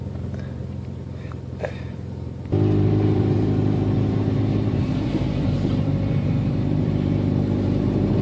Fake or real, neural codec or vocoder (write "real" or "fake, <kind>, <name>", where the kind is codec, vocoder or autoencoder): fake, vocoder, BigVGAN v2